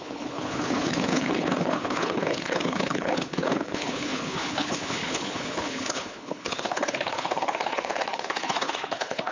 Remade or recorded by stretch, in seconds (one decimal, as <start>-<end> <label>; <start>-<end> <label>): 0.0-9.3 remade